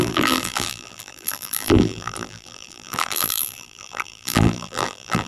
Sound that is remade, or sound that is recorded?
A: remade